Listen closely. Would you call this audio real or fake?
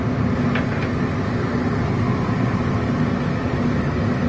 real